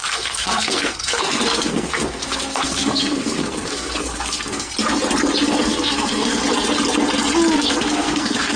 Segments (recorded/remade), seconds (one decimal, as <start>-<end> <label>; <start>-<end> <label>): 0.0-4.7 remade; 4.7-5.5 recorded; 5.5-6.4 remade; 6.4-7.5 recorded; 7.5-8.6 remade